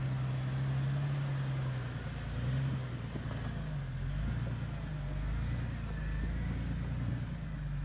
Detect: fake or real real